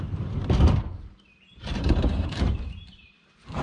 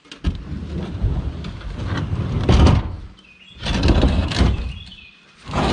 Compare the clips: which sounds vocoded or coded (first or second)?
first